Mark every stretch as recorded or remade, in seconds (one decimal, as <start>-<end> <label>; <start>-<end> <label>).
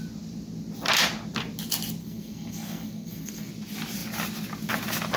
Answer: 0.0-2.0 recorded; 2.0-3.5 remade; 3.5-5.2 recorded